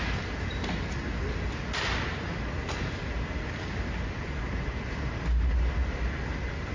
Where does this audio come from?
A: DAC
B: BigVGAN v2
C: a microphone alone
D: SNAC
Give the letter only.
C